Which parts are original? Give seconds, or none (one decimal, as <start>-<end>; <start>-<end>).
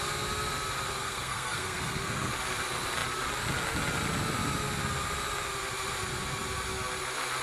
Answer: 0.0-1.0; 2.3-7.4